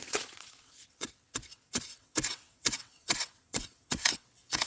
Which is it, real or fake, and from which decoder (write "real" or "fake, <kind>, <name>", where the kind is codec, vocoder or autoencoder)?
fake, vocoder, WaveNeXt